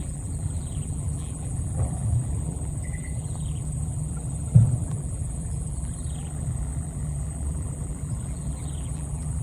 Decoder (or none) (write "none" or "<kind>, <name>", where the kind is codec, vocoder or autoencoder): vocoder, BigVGAN v2